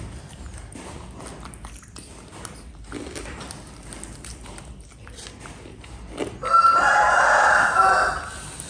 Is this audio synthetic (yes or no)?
no